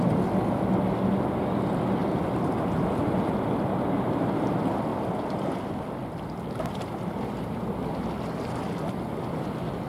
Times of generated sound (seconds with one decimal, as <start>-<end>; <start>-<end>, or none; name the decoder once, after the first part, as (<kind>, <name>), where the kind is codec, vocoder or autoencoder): none